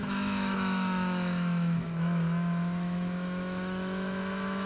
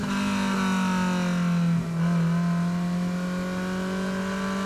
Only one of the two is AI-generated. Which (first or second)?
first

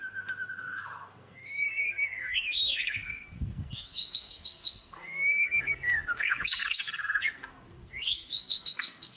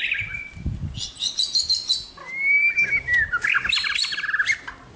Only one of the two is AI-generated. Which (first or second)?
first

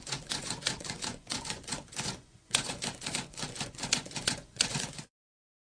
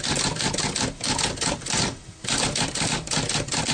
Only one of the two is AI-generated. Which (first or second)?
first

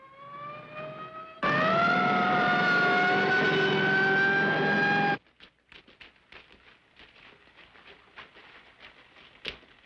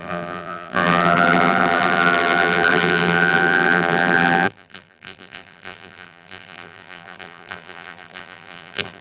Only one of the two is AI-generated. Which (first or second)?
second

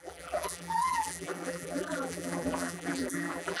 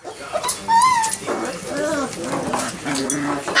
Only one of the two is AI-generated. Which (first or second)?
first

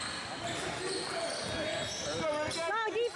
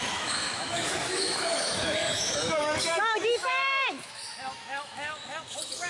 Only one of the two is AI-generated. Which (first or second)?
second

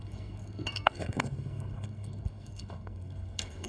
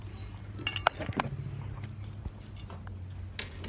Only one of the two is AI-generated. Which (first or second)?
first